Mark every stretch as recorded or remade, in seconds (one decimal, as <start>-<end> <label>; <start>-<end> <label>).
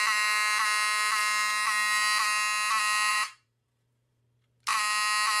0.0-3.1 recorded; 3.1-4.2 remade; 4.2-5.4 recorded